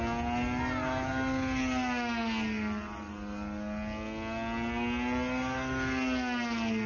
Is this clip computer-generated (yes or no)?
no